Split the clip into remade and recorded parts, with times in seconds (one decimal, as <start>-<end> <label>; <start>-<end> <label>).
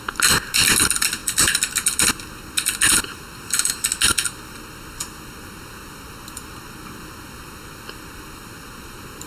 0.0-9.3 recorded